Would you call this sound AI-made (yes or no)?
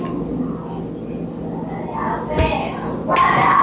no